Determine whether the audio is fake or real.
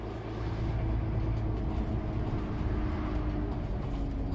real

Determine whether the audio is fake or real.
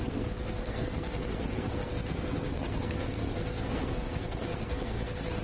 fake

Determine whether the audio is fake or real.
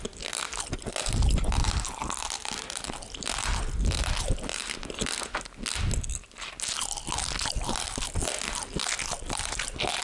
real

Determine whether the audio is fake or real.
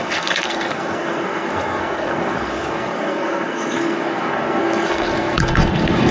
fake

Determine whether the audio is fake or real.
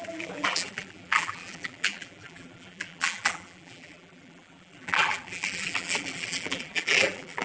fake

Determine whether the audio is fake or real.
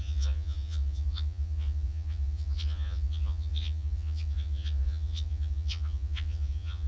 fake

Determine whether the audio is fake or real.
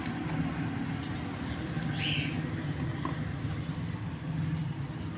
real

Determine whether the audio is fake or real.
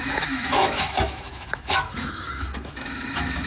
fake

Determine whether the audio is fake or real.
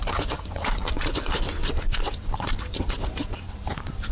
fake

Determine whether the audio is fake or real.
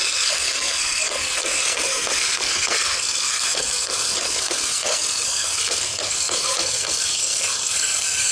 fake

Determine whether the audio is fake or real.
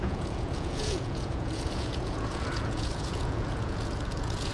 fake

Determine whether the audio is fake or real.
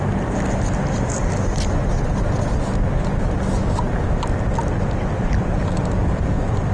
real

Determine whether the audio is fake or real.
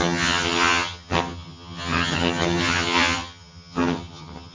fake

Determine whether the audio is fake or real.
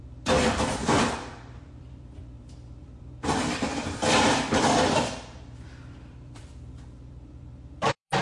fake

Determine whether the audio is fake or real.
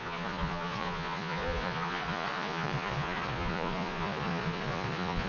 fake